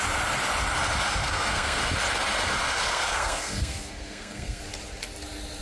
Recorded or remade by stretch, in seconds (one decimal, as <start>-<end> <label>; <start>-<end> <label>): 0.0-1.2 recorded; 1.2-1.8 remade; 1.8-2.8 recorded; 2.8-4.6 remade; 4.6-5.6 recorded